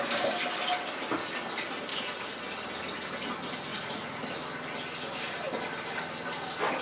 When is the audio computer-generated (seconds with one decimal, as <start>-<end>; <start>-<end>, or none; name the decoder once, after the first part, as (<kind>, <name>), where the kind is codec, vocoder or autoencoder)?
1.9-2.4 (vocoder, Vocos); 3.7-4.3